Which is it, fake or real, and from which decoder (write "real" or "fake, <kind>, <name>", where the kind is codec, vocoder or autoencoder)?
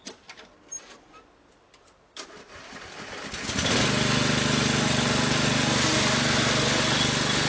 real